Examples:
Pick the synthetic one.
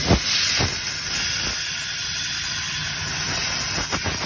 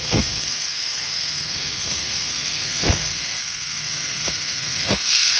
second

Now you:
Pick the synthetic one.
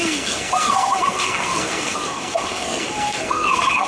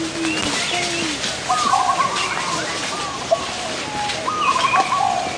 first